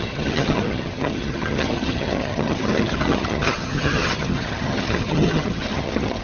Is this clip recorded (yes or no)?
no